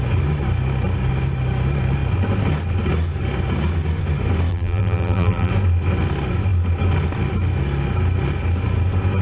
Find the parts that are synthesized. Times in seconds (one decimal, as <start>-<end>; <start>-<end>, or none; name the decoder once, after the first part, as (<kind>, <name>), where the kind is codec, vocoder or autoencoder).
4.5-5.5 (vocoder, BigVGAN v2)